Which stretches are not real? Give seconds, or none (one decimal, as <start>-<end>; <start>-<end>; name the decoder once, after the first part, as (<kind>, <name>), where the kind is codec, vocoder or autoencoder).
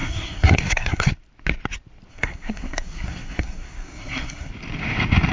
0.0-1.1 (codec, SNAC); 2.1-4.5